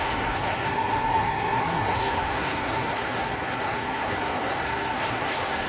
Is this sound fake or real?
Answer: fake